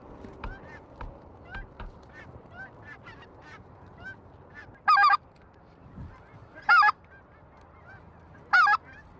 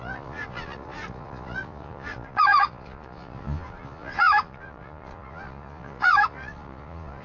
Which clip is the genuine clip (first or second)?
first